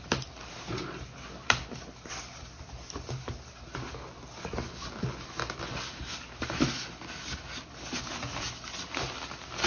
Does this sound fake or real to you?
real